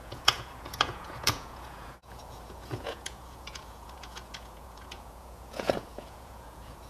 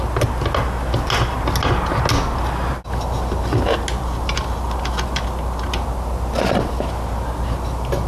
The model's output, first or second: first